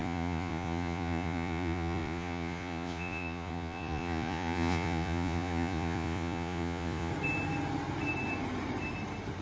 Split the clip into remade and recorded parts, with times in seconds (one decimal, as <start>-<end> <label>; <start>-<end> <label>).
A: 0.0-7.1 remade; 7.1-9.4 recorded